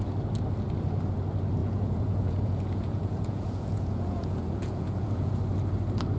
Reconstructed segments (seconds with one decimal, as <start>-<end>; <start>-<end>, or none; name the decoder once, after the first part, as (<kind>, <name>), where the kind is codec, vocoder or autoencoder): 1.6-5.3 (vocoder, Vocos)